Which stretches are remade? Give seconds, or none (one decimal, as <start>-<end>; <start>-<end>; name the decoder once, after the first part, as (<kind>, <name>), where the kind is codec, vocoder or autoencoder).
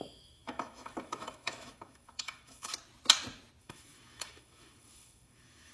0.0-2.7 (autoencoder, DAC-VAE); 3.6-5.7